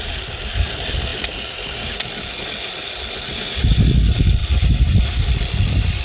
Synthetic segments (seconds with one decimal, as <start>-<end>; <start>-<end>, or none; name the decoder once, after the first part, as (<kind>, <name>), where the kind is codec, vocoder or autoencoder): none